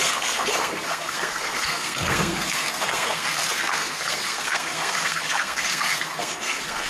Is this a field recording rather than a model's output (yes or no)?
no